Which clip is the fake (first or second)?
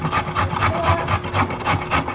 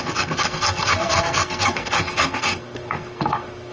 second